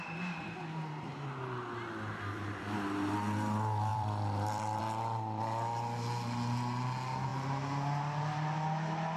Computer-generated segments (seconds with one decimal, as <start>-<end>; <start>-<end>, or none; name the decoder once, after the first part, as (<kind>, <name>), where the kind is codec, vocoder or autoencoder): 3.9-4.8 (vocoder, BigVGAN v2)